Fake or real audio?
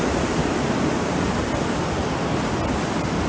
real